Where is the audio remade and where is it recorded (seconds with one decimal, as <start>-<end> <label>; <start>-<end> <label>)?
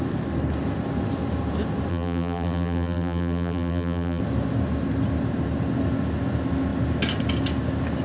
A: 0.0-1.9 recorded; 1.9-4.2 remade; 4.2-8.0 recorded